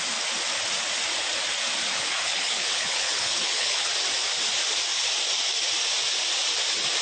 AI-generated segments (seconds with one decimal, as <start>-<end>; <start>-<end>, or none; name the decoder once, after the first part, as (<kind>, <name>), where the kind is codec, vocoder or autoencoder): 1.9-3.9 (codec, HILCodec)